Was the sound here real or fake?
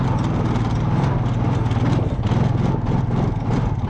real